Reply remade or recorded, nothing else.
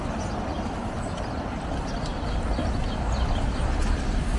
recorded